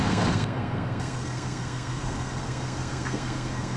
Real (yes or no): no